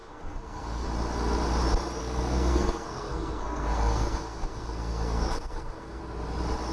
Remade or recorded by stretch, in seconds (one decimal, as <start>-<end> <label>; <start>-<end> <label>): 0.0-0.9 remade; 0.9-2.0 recorded; 2.0-6.0 remade; 6.0-6.7 recorded